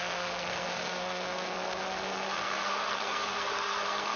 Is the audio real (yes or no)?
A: no